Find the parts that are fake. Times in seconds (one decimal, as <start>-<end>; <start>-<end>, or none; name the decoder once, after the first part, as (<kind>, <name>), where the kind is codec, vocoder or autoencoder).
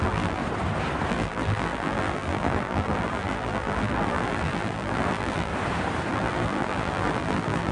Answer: 0.0-0.4 (vocoder, BigVGAN v2); 1.1-5.5; 6.1-7.7